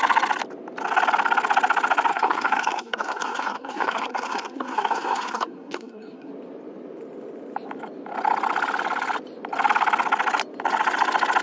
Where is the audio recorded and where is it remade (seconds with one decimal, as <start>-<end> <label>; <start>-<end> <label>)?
0.0-2.1 recorded; 2.1-6.3 remade; 6.3-11.4 recorded